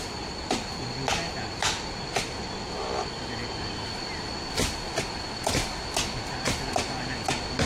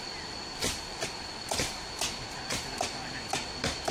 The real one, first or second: first